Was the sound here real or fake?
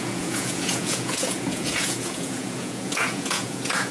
fake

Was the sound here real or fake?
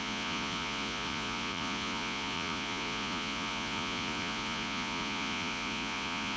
fake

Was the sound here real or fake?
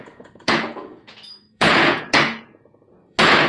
fake